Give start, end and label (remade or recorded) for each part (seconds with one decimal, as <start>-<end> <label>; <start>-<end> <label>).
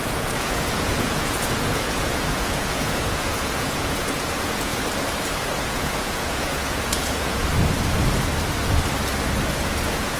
0.0-4.7 remade; 4.7-5.6 recorded; 5.6-7.4 remade; 7.4-9.6 recorded; 9.6-10.2 remade